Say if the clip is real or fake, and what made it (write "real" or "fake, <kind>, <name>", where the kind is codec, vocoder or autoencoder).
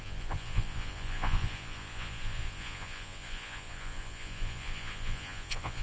fake, vocoder, Vocos